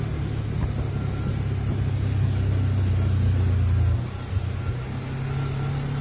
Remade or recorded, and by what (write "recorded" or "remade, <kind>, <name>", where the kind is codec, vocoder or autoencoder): recorded